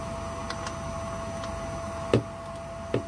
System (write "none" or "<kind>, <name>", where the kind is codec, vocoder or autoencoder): none